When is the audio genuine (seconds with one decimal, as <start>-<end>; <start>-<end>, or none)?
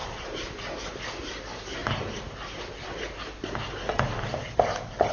1.4-1.8; 3.0-5.1